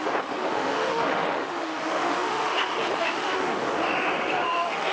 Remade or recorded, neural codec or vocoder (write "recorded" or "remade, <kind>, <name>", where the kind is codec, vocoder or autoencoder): remade, autoencoder, DAC-VAE